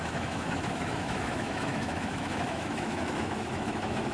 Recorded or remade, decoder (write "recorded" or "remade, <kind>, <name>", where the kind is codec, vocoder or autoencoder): remade, autoencoder, DAC-VAE